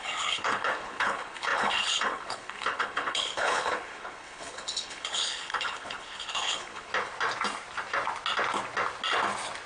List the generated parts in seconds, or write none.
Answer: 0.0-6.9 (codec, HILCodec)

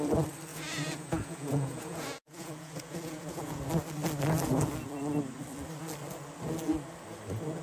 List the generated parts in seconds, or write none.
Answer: 0.5-3.6 (vocoder, Vocos)

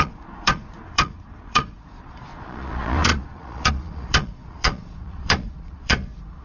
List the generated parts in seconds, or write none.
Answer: 0.0-6.4 (vocoder, Vocos)

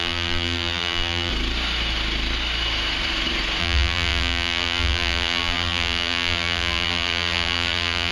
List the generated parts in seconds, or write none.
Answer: 0.0-1.3 (vocoder, BigVGAN v2); 3.6-8.1